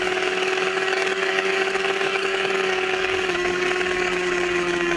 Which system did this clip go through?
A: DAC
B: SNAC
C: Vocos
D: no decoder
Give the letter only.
A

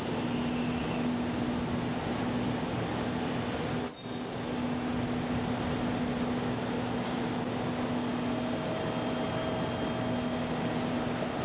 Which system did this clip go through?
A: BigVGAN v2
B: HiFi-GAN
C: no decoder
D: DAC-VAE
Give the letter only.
C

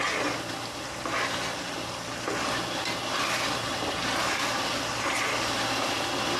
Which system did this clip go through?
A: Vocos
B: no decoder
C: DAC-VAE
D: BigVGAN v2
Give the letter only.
B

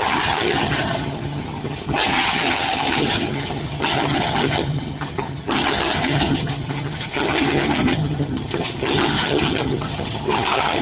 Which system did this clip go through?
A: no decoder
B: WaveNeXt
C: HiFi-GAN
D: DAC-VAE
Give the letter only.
C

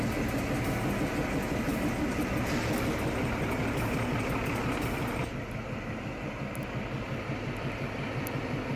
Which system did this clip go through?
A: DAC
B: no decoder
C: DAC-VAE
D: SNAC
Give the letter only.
B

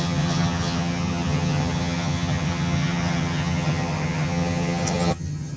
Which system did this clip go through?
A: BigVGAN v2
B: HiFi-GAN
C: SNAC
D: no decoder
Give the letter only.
B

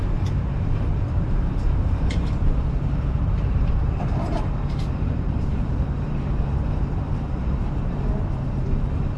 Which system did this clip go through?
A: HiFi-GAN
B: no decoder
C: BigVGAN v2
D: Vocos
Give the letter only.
C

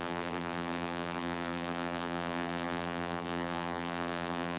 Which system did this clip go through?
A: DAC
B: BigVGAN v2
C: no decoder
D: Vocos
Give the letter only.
B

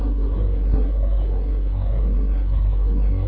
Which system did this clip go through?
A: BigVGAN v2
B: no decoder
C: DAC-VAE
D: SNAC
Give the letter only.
D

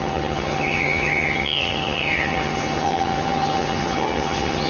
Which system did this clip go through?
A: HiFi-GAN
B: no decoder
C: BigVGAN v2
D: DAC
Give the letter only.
A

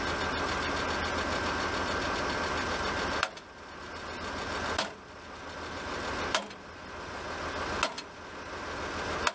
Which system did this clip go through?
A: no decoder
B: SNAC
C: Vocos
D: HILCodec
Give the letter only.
A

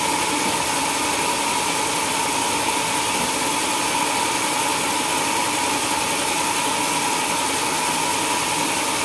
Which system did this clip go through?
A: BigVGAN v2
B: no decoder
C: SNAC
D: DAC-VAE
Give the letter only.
B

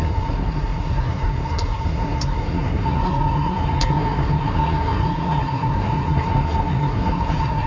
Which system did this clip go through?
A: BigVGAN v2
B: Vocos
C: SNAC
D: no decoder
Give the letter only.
C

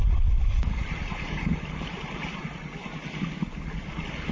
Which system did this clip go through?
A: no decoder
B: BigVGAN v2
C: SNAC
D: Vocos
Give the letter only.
A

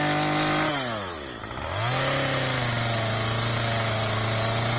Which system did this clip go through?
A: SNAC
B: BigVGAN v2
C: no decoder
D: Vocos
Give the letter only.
C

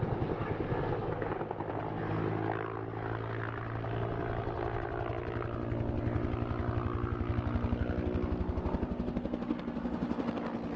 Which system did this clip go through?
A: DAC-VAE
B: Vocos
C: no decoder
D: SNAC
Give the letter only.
C